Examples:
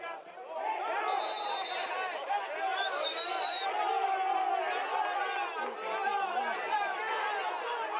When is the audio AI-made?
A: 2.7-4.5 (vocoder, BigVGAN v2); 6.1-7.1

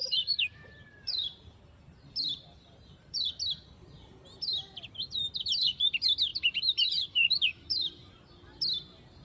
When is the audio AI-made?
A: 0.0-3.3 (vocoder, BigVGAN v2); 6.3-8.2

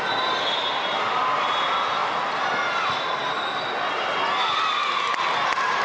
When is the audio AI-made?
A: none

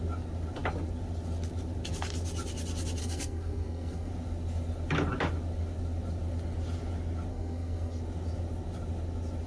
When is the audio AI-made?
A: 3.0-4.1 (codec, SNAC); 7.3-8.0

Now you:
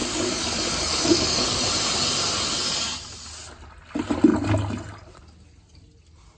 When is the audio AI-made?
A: 0.0-1.6 (codec, DAC)